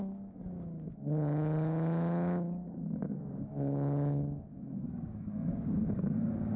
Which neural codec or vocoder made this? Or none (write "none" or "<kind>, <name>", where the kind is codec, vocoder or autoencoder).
codec, DAC